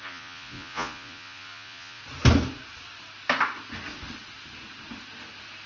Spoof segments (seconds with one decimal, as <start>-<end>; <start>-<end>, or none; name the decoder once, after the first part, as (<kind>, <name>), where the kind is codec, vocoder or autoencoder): 0.0-2.0 (vocoder, Vocos)